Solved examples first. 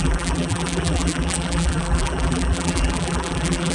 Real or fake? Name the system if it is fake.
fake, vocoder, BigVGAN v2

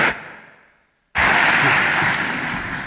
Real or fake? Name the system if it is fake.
real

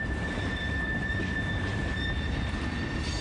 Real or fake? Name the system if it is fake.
fake, vocoder, BigVGAN v2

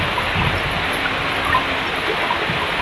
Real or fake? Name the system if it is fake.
real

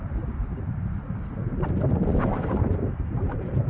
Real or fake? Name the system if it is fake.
fake, vocoder, BigVGAN v2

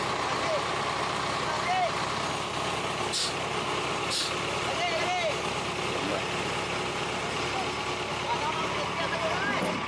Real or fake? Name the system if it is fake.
real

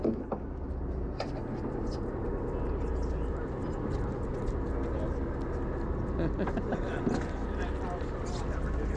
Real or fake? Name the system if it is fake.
real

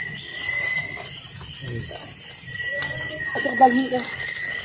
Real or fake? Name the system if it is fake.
real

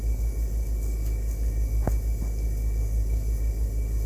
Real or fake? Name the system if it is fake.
real